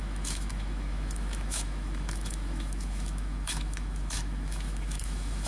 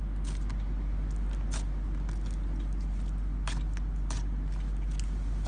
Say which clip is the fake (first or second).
first